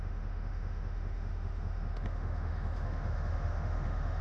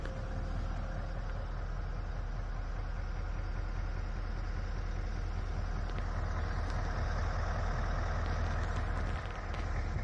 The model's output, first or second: first